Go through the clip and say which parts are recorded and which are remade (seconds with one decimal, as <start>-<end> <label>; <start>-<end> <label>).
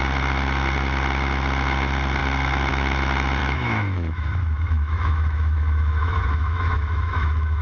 0.0-3.4 recorded; 3.4-7.6 remade